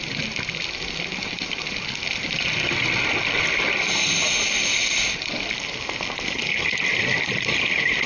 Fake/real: real